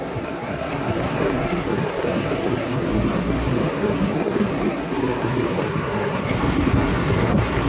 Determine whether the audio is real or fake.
fake